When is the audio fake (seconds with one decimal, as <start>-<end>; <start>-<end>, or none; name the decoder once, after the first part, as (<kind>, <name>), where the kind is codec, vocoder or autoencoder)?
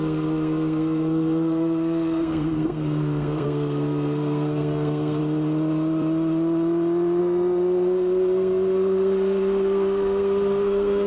0.0-5.2 (codec, SNAC); 7.2-11.1